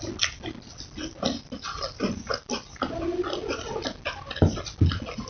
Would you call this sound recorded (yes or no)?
yes